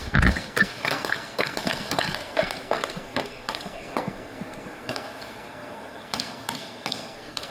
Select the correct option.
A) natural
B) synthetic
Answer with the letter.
B